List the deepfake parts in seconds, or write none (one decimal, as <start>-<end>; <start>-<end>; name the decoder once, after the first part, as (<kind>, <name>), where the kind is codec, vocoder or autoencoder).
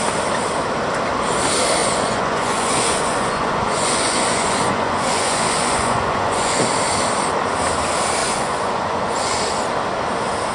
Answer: 1.8-6.6 (vocoder, Vocos); 8.2-9.4